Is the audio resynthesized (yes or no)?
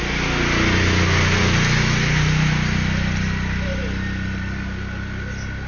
no